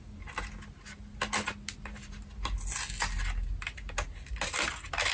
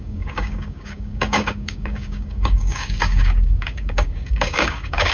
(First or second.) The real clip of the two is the first